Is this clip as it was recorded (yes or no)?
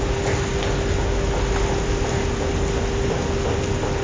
yes